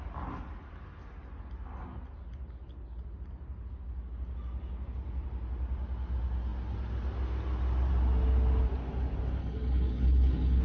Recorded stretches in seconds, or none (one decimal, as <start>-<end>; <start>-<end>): 0.0-9.4